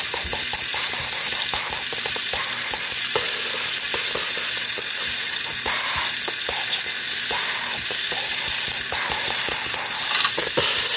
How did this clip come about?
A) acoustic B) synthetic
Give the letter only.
A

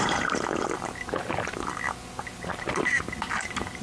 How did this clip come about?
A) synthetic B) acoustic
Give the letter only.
B